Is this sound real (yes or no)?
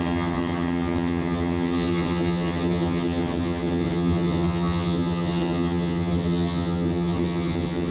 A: no